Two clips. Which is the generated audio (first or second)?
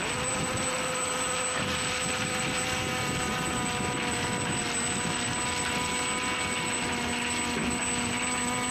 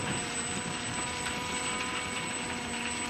second